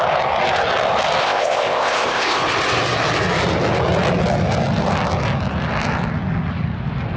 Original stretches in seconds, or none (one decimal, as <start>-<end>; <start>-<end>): 0.0-1.2; 2.4-7.2